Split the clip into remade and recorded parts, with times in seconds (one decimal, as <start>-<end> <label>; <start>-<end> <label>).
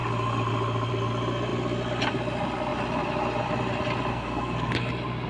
0.0-4.1 recorded; 4.1-4.7 remade; 4.7-5.3 recorded